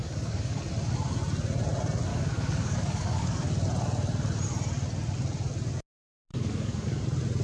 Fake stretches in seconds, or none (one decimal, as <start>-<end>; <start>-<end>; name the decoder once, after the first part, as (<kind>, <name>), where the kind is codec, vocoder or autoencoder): 0.0-0.6 (codec, DAC); 2.1-3.5; 6.3-7.0